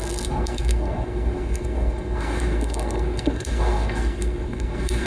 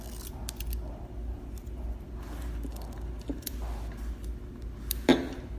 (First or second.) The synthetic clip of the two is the first